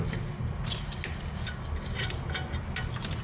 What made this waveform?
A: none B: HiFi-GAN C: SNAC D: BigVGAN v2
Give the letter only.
A